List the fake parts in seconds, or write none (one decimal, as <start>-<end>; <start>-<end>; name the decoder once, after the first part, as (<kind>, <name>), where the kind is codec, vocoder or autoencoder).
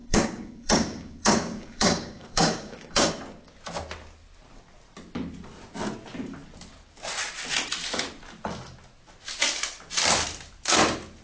0.0-3.1 (codec, DAC)